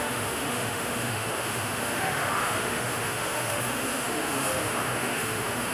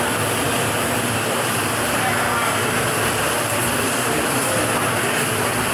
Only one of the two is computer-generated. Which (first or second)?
first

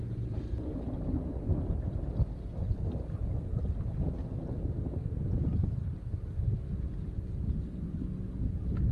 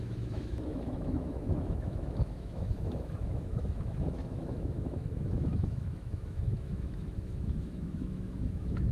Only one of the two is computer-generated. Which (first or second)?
second